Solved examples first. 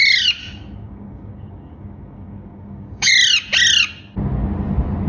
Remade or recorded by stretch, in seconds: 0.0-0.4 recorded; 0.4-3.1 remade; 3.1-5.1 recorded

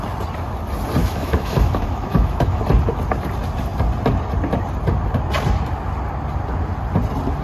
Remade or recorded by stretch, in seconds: 0.0-1.0 recorded; 1.0-2.6 remade; 2.6-7.4 recorded

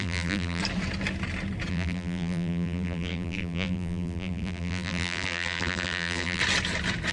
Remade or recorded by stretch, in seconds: 0.0-0.6 remade; 0.6-1.7 recorded; 1.7-6.4 remade; 6.4-7.1 recorded

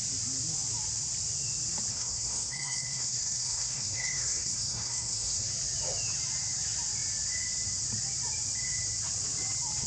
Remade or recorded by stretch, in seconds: 0.0-1.9 recorded; 1.9-5.5 remade; 5.5-9.9 recorded

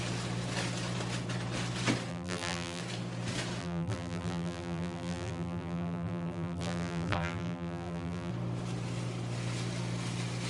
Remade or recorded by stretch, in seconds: 0.0-2.1 recorded; 2.1-2.8 remade; 2.8-3.6 recorded; 3.6-8.3 remade; 8.3-10.5 recorded

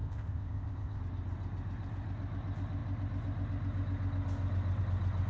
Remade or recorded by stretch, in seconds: 0.0-1.0 remade; 1.0-5.3 recorded

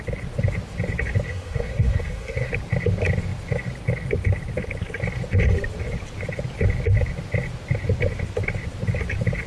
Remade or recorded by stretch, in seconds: 0.0-1.3 recorded; 1.3-2.5 remade; 2.5-9.5 recorded

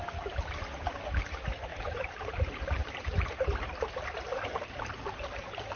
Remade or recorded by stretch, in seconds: 0.0-1.7 recorded; 1.7-2.3 remade; 2.3-2.8 recorded; 2.8-4.9 remade; 4.9-5.8 recorded